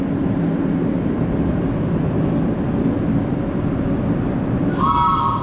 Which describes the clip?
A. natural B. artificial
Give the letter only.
A